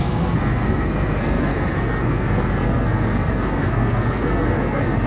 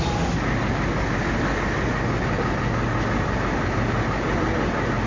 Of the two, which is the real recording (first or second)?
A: second